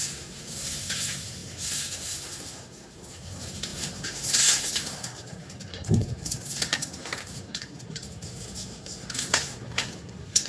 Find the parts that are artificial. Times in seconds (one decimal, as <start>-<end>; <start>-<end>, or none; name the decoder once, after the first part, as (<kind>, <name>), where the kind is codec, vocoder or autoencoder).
0.0-10.5 (codec, SNAC)